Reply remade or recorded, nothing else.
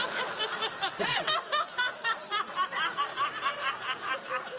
recorded